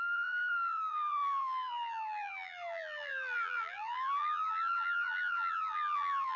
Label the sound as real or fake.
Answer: fake